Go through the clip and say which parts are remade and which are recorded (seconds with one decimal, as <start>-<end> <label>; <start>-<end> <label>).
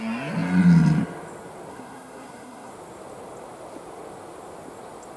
0.0-1.7 recorded; 1.7-2.7 remade; 2.7-5.2 recorded